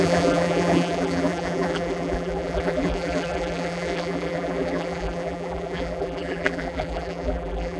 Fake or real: fake